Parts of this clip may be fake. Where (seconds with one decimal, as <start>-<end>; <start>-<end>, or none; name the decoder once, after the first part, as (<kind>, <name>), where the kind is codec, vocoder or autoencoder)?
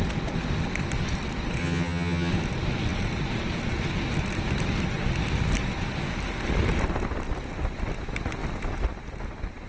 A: 1.6-2.3 (vocoder, HiFi-GAN)